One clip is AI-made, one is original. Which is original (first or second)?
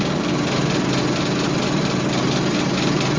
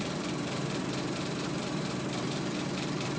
first